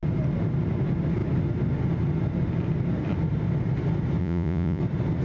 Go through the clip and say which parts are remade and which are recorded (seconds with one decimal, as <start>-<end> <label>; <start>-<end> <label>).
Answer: 0.0-4.2 recorded; 4.2-4.8 remade; 4.8-5.2 recorded